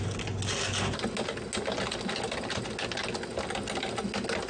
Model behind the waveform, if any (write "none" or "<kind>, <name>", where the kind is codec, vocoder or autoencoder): none